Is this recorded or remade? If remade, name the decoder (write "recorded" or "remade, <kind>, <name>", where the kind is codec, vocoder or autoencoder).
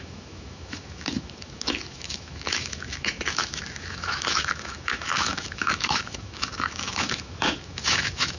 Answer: remade, autoencoder, DAC-VAE